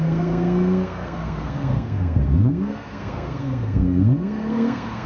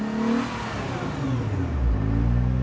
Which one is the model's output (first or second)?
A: first